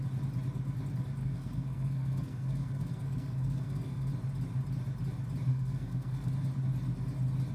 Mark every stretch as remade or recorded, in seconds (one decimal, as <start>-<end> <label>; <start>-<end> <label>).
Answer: 0.0-1.2 recorded; 1.2-4.1 remade; 4.1-5.5 recorded; 5.5-6.3 remade; 6.3-7.5 recorded